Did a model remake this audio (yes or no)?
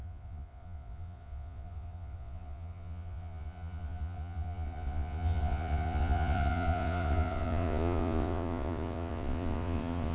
yes